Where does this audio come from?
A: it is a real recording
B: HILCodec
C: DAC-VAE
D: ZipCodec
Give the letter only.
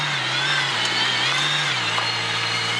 A